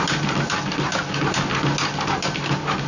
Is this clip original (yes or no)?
yes